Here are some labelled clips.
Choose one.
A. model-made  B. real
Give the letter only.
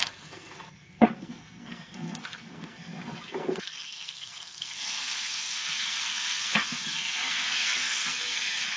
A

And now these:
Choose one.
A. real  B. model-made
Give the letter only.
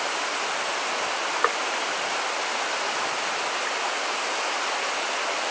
A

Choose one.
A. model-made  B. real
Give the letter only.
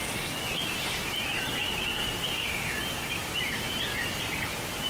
B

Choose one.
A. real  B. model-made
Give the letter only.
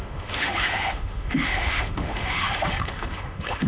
B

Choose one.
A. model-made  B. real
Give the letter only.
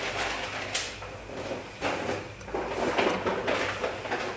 B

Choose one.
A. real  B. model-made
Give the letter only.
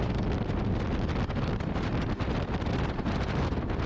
A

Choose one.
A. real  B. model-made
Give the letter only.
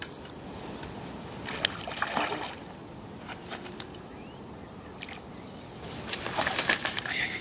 B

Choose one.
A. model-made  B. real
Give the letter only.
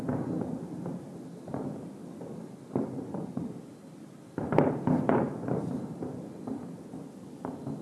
B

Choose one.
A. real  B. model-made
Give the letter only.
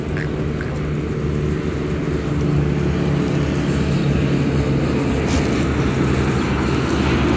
A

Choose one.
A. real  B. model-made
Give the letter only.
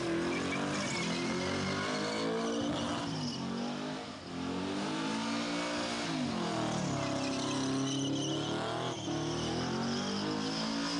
A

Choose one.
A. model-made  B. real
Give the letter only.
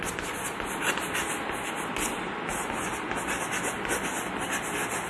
B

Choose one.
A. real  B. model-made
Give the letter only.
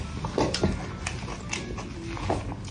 A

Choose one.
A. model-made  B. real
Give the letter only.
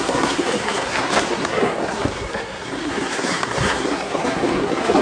A